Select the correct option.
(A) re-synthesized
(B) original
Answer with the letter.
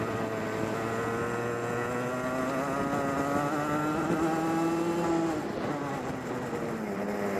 B